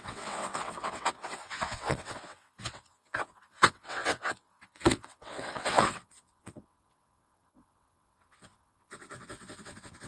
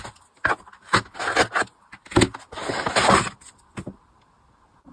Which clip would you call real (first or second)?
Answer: second